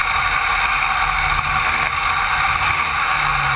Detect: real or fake real